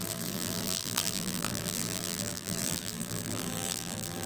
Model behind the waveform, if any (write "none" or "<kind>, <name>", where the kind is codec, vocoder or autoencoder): vocoder, BigVGAN v2